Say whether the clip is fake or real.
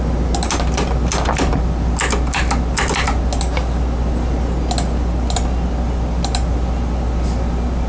real